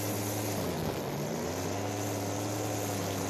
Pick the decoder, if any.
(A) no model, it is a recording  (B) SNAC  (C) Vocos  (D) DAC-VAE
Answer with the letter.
A